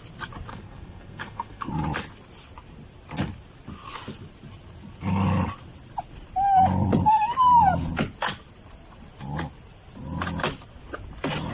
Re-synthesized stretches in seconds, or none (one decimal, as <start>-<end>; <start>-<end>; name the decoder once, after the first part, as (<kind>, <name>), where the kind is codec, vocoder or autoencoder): 0.5-1.7 (codec, SNAC)